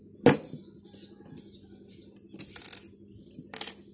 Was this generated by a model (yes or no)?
no